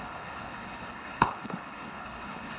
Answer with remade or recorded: remade